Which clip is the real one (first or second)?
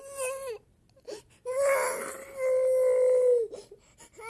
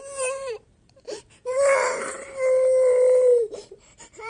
first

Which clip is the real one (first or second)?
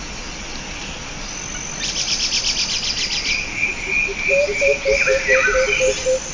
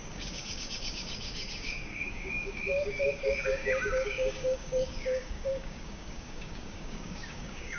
first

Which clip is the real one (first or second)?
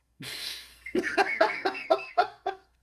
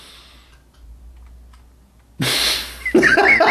second